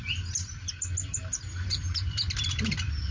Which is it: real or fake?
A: real